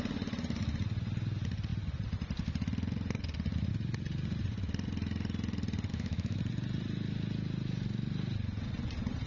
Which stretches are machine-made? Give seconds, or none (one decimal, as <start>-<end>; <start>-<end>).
5.9-6.4